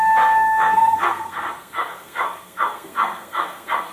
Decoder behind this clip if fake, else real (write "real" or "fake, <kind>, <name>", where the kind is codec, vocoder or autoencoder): fake, codec, SNAC